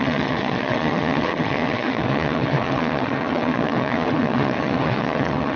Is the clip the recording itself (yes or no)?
no